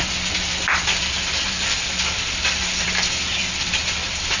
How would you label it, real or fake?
fake